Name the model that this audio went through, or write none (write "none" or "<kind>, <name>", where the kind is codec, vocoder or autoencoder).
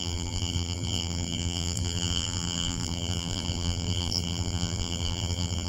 vocoder, BigVGAN v2